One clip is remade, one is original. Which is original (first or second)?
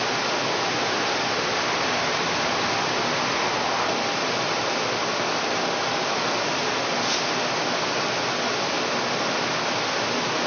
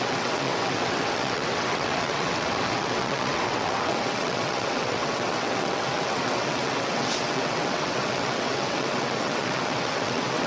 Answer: first